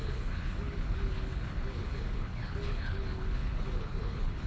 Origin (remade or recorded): remade